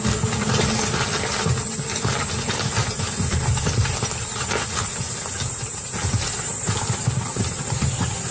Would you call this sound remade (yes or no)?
no